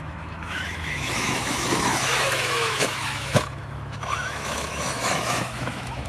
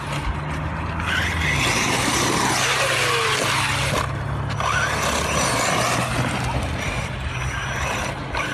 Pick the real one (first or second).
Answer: second